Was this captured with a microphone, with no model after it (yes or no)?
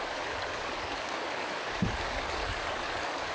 no